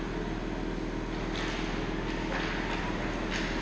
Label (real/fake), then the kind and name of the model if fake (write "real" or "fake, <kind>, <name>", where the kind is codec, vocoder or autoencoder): real